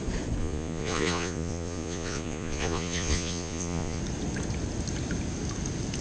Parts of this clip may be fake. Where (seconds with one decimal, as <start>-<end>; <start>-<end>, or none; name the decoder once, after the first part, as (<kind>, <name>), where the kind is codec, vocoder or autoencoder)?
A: 0.4-4.0 (vocoder, Vocos)